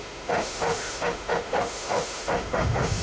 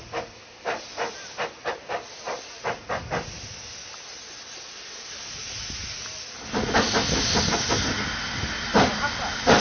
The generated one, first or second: first